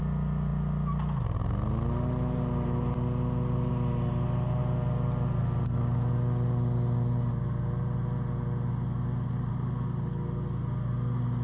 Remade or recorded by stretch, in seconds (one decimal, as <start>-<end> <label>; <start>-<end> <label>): 0.0-11.4 recorded